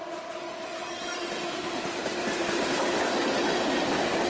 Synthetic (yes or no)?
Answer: no